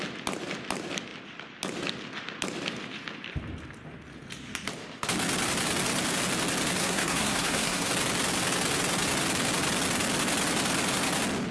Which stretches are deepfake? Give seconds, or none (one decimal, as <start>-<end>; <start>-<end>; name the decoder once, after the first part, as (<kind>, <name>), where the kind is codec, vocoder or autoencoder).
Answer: 6.8-7.9 (codec, SNAC)